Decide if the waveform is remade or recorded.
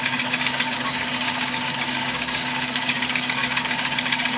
remade